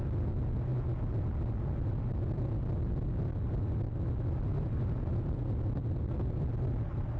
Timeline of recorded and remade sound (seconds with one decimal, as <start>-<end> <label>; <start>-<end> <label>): 0.0-4.5 recorded; 4.5-5.4 remade; 5.4-7.2 recorded